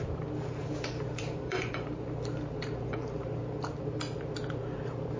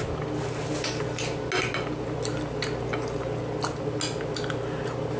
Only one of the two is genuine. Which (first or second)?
second